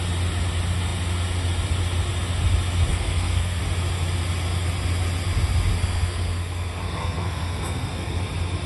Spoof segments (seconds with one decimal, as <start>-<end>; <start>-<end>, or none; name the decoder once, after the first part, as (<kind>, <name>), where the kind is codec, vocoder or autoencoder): 2.9-3.6 (codec, SNAC); 5.8-8.2